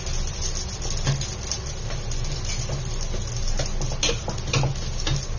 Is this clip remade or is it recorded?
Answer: recorded